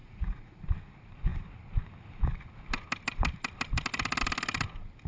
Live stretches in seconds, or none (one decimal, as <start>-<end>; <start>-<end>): 0.6-5.1